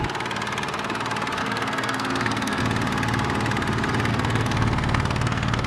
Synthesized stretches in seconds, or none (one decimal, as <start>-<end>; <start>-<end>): 1.4-2.6; 4.1-5.7